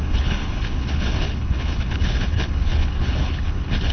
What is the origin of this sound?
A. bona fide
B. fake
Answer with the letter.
B